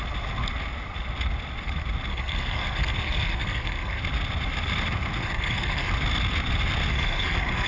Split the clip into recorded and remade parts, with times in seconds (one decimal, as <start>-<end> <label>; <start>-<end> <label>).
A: 0.0-2.1 recorded; 2.1-4.0 remade; 4.0-5.2 recorded; 5.2-5.9 remade; 5.9-6.9 recorded; 6.9-7.7 remade